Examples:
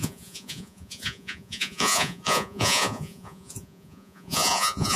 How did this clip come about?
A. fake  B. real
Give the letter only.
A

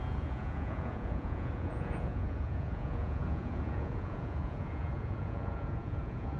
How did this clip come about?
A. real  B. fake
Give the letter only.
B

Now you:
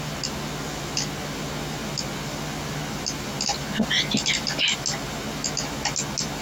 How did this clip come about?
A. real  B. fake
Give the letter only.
A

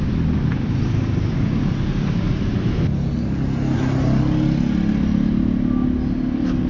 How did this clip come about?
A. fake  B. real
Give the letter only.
B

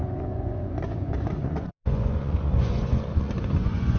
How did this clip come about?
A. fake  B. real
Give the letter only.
A